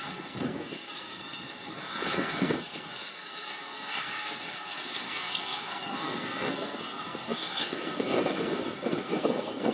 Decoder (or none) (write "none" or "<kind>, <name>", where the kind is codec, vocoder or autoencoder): codec, SNAC